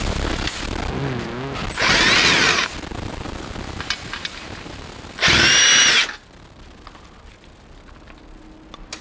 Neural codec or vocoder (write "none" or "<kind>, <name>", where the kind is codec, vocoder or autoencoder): none